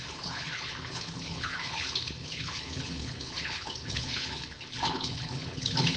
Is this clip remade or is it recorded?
remade